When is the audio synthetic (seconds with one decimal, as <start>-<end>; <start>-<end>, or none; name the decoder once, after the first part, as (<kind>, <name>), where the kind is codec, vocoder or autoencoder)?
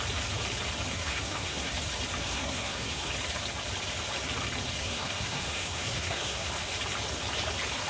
0.9-1.7 (codec, SNAC); 2.2-3.1; 4.8-6.5